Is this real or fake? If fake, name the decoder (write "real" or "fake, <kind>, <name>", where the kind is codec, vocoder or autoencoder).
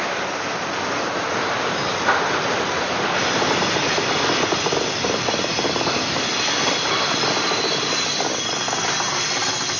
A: real